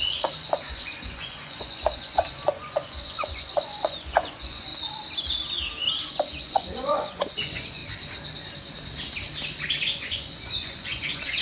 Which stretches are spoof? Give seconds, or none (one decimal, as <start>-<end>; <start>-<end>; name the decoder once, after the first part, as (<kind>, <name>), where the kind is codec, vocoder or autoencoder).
0.0-4.7 (vocoder, Vocos); 6.1-7.8; 9.8-11.4